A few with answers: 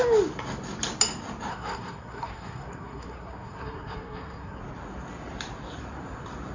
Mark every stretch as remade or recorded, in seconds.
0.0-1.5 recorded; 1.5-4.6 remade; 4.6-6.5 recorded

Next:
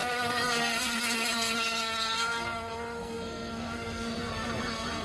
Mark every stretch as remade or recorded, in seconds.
0.0-5.0 remade

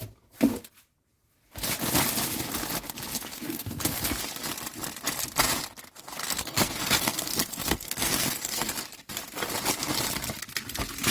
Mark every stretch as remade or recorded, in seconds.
0.0-3.1 recorded; 3.1-4.0 remade; 4.0-6.2 recorded; 6.2-8.7 remade; 8.7-11.1 recorded

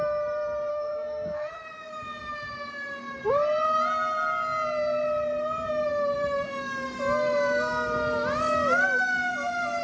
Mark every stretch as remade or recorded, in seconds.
0.0-0.7 recorded; 0.7-1.5 remade; 1.5-9.8 recorded

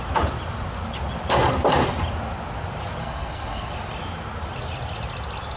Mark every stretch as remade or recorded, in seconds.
0.0-3.0 recorded; 3.0-3.7 remade; 3.7-5.6 recorded

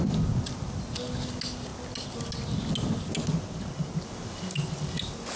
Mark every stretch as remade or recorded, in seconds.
0.0-5.4 recorded